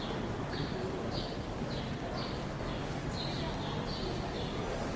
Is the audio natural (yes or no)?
yes